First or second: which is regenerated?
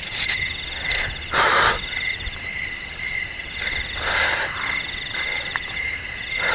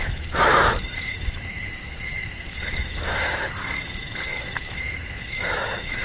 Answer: second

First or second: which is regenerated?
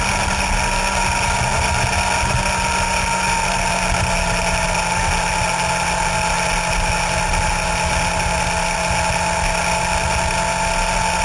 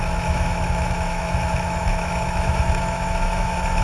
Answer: second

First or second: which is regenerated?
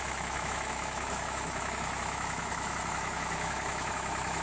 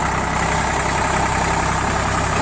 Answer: first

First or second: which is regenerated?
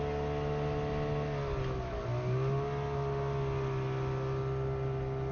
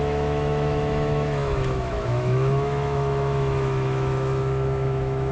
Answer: second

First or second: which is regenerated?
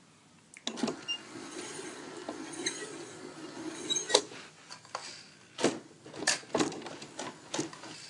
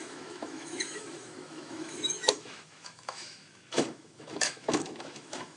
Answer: second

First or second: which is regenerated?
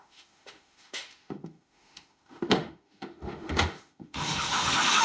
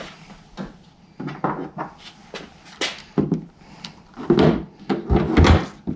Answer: first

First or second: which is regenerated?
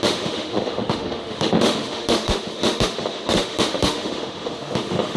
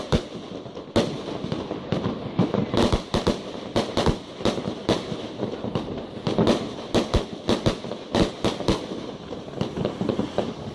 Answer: first